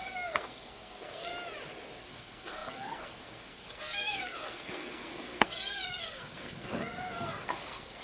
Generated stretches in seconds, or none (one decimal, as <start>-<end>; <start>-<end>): 0.0-1.3; 2.0-8.0